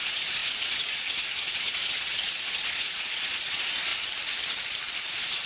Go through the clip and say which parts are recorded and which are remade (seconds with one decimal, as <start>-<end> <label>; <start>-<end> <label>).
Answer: 0.0-3.9 remade; 3.9-5.0 recorded; 5.0-5.5 remade